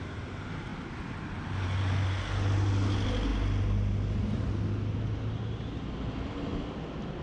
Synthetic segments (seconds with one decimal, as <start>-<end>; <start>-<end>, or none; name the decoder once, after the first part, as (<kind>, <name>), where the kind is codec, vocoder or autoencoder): none

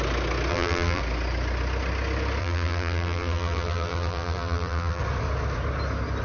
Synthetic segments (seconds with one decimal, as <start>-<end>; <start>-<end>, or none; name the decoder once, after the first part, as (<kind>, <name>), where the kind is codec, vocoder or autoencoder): 0.5-1.0 (vocoder, BigVGAN v2); 2.4-5.0

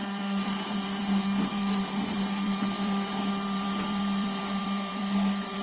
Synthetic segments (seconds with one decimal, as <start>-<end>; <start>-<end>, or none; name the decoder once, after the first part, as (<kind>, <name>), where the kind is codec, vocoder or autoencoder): 0.0-5.6 (vocoder, BigVGAN v2)

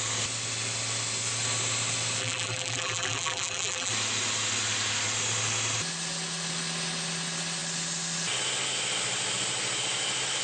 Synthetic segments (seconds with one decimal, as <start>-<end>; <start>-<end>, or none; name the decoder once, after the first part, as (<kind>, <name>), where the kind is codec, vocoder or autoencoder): 2.2-3.9 (vocoder, BigVGAN v2)

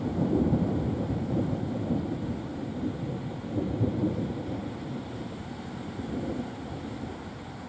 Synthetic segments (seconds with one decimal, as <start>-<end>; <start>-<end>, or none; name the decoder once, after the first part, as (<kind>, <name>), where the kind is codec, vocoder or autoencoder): 0.0-2.5 (vocoder, BigVGAN v2); 3.9-4.6; 5.4-7.7